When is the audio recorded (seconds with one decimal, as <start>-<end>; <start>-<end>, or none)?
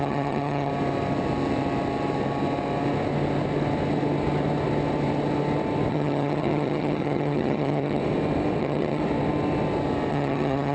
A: 0.7-5.9; 8.0-8.6; 9.0-10.1